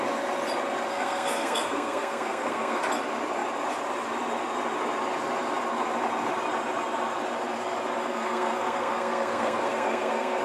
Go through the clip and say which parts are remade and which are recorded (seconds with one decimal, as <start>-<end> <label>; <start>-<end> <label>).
0.0-0.9 recorded; 0.9-2.8 remade; 2.8-8.0 recorded; 8.0-10.4 remade